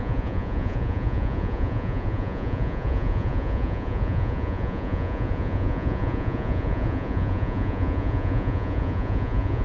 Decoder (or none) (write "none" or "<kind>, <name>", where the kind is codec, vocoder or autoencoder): vocoder, Vocos